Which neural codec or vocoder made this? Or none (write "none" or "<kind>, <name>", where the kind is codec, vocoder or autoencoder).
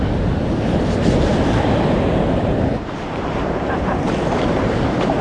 vocoder, BigVGAN v2